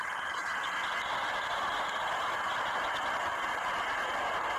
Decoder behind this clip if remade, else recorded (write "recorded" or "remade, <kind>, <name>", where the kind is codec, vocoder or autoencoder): recorded